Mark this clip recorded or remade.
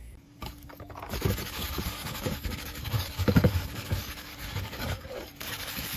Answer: remade